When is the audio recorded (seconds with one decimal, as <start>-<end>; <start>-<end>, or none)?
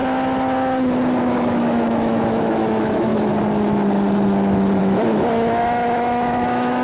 0.0-1.2; 3.1-4.8